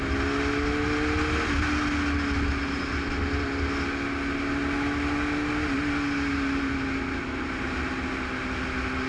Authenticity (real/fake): real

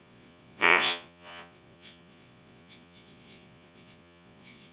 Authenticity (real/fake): fake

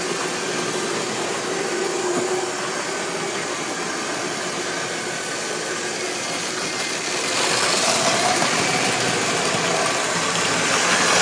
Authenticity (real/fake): real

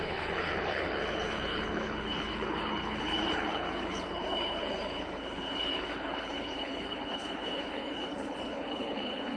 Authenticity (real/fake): fake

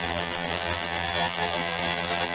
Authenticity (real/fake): fake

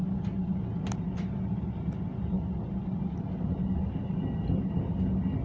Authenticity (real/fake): real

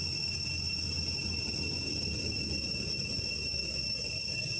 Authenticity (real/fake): real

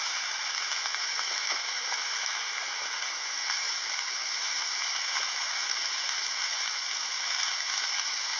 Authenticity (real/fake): fake